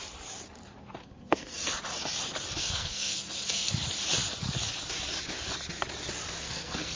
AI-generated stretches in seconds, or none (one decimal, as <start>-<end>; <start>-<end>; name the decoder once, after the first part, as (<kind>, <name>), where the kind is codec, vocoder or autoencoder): 1.0-1.7 (codec, SNAC); 2.6-3.7; 6.4-7.0